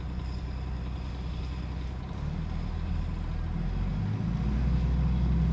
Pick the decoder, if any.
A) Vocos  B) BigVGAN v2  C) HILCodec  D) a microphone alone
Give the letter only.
D